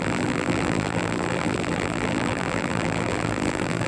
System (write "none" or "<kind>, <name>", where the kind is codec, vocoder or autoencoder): vocoder, BigVGAN v2